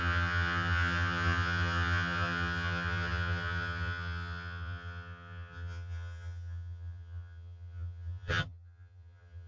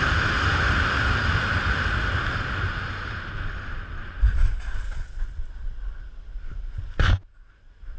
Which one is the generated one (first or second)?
first